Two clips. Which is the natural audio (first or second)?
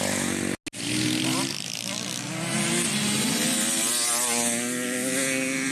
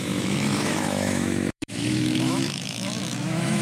first